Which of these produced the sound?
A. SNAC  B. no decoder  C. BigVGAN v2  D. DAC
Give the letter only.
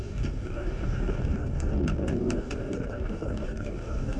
D